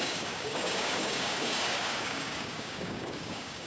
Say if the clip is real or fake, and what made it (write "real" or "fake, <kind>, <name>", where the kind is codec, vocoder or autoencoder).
fake, codec, DAC